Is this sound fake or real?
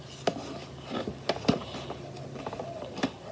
real